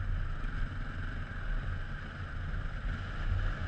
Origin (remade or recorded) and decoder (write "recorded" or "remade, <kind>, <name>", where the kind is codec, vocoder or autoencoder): recorded